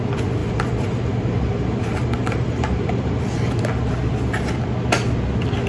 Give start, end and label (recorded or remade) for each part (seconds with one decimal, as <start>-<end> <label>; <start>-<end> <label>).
0.0-0.4 recorded; 0.4-3.2 remade; 3.2-5.7 recorded